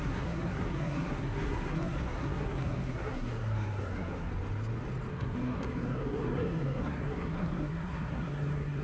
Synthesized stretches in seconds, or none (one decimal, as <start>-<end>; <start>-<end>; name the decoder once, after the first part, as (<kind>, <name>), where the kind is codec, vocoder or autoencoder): 0.0-4.3 (codec, SNAC); 5.1-8.8